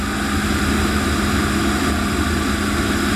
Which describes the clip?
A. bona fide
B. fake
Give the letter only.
A